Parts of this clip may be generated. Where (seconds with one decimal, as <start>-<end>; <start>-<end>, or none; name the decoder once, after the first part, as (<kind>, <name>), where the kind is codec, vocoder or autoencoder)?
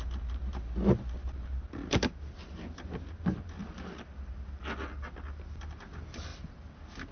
none